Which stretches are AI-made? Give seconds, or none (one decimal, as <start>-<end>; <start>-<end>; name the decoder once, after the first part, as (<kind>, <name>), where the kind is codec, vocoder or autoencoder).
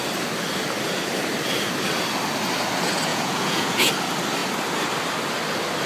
3.1-3.9 (vocoder, Vocos)